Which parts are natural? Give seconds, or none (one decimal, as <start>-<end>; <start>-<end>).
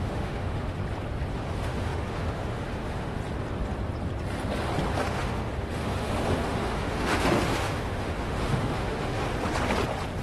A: 0.8-1.3; 3.2-4.9; 9.3-10.2